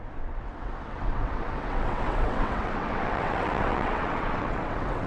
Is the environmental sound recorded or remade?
remade